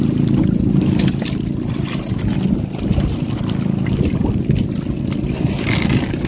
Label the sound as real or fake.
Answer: real